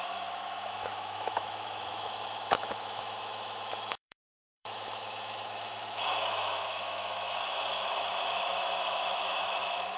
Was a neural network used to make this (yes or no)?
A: yes